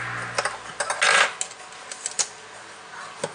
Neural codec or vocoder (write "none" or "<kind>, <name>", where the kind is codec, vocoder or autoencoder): none